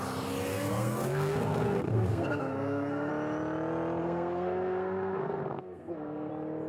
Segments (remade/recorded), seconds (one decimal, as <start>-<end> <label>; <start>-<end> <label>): 0.0-0.5 recorded; 0.5-3.1 remade; 3.1-4.0 recorded; 4.0-6.3 remade; 6.3-6.7 recorded